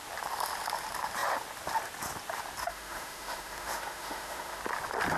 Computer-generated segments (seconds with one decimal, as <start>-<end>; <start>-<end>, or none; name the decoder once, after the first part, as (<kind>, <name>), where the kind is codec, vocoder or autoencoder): 2.6-4.6 (autoencoder, DAC-VAE)